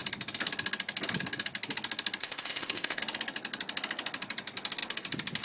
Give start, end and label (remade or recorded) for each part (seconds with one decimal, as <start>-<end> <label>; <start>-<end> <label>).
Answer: 0.0-2.2 recorded; 2.2-3.0 remade; 3.0-5.4 recorded